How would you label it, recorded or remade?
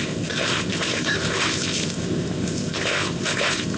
remade